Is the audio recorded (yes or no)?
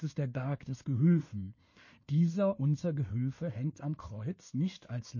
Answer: no